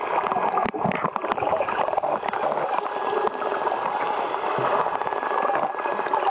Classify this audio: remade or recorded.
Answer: recorded